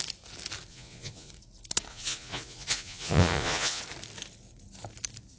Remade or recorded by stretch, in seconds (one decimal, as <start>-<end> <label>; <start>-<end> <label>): 0.0-0.7 recorded; 0.7-1.3 remade; 1.3-1.9 recorded; 1.9-3.8 remade; 3.8-5.4 recorded